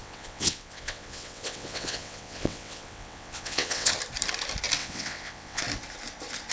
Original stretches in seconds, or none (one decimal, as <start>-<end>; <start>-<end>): 3.9-4.8; 5.6-6.5